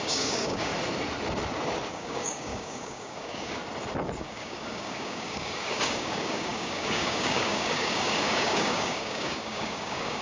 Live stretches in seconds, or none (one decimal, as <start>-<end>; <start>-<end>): 0.7-1.9; 3.6-4.2

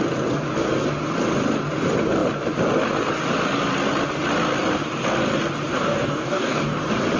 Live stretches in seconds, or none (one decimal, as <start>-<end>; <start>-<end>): 0.0-5.7; 6.8-7.2

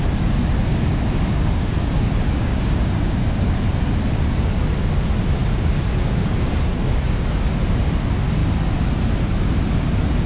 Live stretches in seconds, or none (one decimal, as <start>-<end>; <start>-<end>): 0.0-0.7; 3.5-5.4; 7.6-10.3

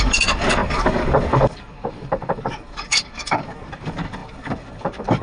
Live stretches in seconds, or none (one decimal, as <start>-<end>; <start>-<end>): none

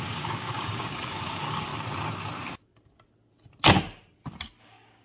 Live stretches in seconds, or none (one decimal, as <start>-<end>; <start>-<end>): 1.7-4.6